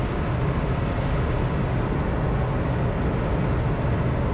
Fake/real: real